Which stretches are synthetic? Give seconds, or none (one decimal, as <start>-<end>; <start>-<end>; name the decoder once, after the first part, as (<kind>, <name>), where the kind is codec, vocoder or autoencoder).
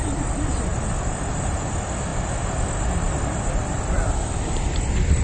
none